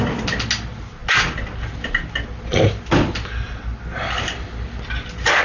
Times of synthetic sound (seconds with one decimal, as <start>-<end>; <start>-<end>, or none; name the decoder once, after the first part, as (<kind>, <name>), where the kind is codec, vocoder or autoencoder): none